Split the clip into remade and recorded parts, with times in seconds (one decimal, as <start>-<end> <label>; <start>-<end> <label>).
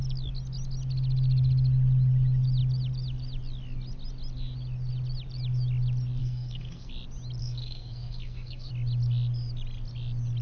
0.0-6.2 recorded; 6.2-6.9 remade; 6.9-7.4 recorded; 7.4-8.7 remade; 8.7-10.4 recorded